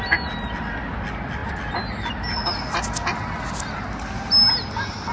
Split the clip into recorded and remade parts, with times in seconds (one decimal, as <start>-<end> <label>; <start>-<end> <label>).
0.0-5.1 recorded